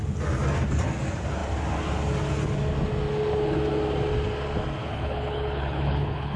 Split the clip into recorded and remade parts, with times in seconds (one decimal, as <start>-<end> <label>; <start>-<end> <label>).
0.0-4.8 recorded; 4.8-6.4 remade